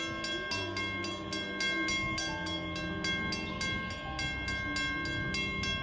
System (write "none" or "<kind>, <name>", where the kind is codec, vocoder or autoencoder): none